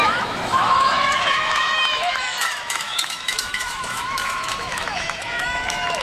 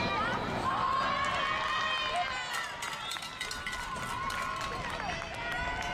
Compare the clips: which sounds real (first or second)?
second